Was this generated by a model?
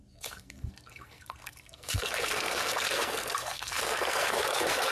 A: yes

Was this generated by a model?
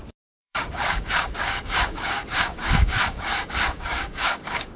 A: yes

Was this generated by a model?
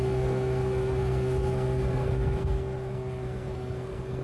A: yes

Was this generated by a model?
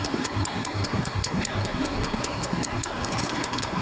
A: yes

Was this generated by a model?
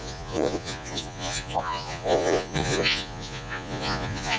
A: yes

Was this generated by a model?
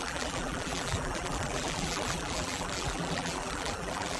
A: yes